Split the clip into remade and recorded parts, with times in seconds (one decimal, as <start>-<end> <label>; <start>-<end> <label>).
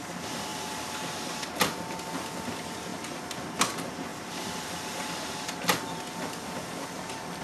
0.0-0.5 recorded; 0.5-1.5 remade; 1.5-2.9 recorded; 2.9-3.4 remade; 3.4-4.1 recorded; 4.1-7.4 remade